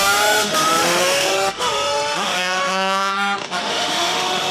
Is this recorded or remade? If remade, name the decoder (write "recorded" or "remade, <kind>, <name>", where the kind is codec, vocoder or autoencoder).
remade, autoencoder, DAC-VAE